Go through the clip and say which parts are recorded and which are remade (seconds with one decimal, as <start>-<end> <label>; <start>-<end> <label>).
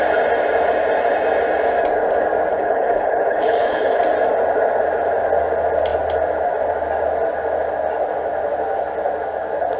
0.0-2.5 recorded; 2.5-4.0 remade; 4.0-9.8 recorded